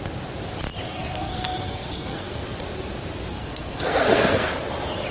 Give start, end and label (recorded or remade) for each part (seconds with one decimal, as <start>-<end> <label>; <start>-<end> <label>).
0.0-0.9 recorded; 0.9-2.4 remade; 2.4-3.3 recorded; 3.3-4.5 remade; 4.5-5.1 recorded